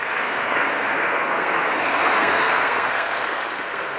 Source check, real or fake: fake